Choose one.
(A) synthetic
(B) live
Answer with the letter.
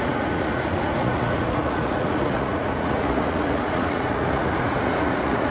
A